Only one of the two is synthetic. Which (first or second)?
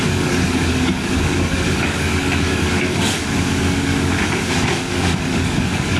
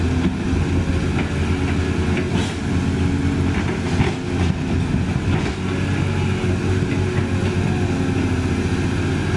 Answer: first